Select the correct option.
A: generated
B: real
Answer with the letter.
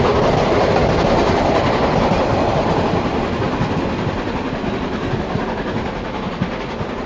B